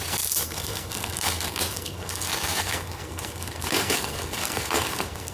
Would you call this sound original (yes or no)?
no